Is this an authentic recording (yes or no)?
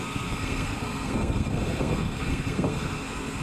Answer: no